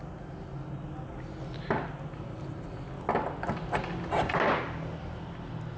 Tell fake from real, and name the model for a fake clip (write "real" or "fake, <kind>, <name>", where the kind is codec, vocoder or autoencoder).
real